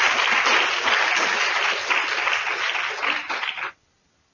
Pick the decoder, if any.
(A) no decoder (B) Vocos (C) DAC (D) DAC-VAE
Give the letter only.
A